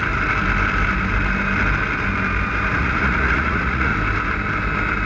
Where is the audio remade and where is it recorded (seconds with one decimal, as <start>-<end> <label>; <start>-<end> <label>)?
0.0-2.7 recorded; 2.7-3.9 remade; 3.9-5.1 recorded